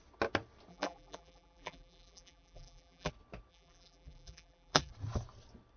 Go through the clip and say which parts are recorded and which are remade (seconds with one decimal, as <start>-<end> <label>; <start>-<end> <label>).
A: 0.0-0.7 recorded; 0.7-3.1 remade; 3.1-3.5 recorded; 3.5-4.9 remade; 4.9-5.8 recorded